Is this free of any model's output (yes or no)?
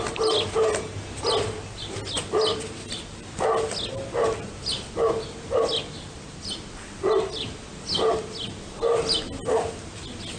yes